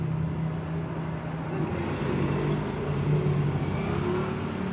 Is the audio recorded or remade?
recorded